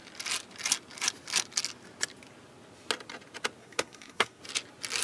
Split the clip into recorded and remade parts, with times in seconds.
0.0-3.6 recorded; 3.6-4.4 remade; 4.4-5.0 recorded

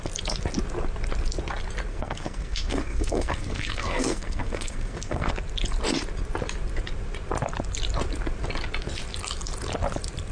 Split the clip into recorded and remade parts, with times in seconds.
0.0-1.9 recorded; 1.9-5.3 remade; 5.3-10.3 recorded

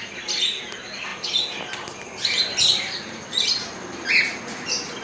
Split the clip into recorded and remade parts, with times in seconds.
0.0-5.0 recorded